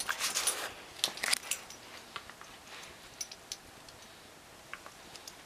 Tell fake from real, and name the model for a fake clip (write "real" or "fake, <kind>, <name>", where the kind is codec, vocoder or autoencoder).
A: real